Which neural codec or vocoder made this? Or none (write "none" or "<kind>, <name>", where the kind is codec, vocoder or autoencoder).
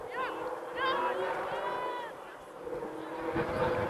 none